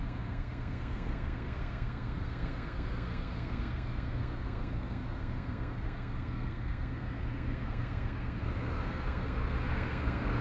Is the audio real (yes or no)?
no